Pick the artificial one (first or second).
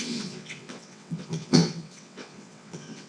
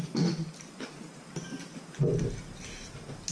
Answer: first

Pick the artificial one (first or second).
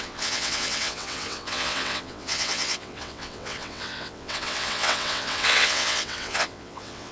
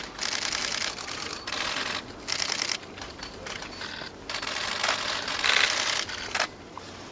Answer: first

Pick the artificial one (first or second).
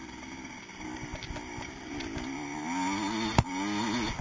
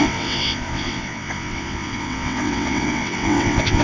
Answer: second